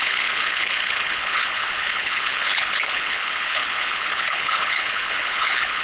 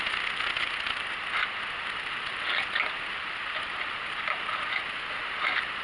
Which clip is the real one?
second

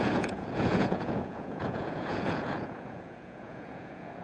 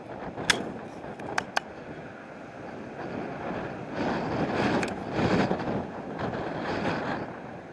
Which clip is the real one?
second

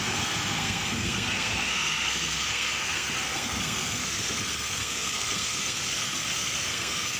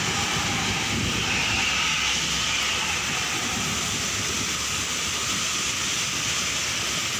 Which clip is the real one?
second